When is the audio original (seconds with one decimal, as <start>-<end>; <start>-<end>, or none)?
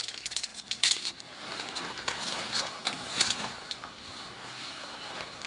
none